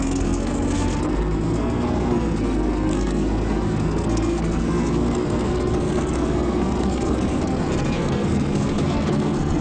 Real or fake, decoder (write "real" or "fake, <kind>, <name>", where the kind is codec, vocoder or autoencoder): fake, codec, SNAC